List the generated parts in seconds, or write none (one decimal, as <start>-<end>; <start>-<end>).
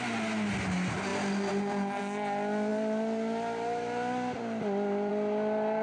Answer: none